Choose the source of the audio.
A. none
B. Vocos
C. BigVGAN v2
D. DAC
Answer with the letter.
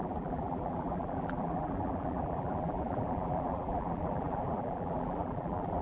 C